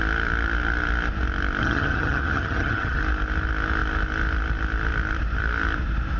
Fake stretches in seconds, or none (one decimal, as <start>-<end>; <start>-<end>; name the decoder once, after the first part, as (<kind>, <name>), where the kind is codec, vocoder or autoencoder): 1.6-3.0 (vocoder, HiFi-GAN)